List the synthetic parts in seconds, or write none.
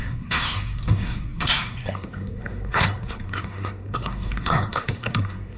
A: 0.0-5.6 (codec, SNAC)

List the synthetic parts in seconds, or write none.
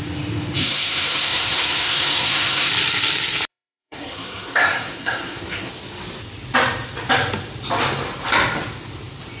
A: 0.6-2.7 (codec, SNAC); 3.5-5.7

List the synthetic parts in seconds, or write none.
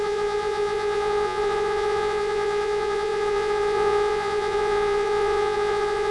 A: 0.0-6.1 (vocoder, Vocos)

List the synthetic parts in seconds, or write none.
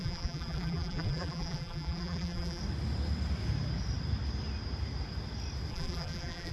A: 0.0-2.6 (vocoder, BigVGAN v2); 5.7-6.5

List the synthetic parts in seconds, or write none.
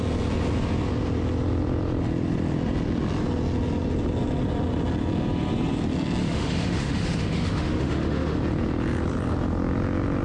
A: 6.2-8.4 (autoencoder, DAC-VAE)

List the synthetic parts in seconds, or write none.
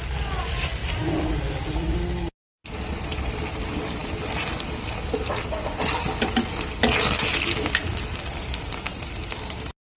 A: none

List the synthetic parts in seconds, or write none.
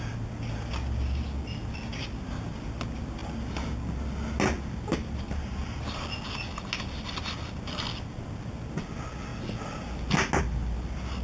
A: none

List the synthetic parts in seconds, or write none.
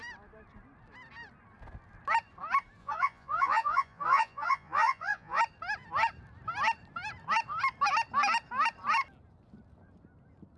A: 2.8-5.4 (vocoder, Vocos)